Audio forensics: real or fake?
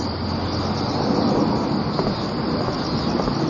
real